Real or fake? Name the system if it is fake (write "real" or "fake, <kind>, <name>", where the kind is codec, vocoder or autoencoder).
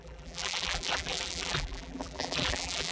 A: fake, vocoder, BigVGAN v2